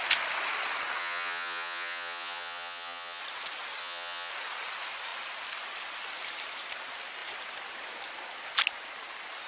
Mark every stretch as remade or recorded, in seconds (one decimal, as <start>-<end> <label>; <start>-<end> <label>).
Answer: 0.0-1.0 recorded; 1.0-3.2 remade; 3.2-3.8 recorded; 3.8-4.3 remade; 4.3-9.5 recorded